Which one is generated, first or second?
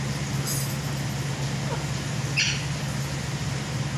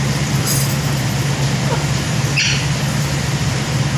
second